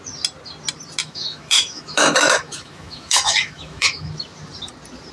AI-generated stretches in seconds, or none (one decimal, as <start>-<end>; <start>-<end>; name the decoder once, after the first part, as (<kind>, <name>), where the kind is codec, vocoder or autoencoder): 1.0-4.1 (autoencoder, DAC-VAE)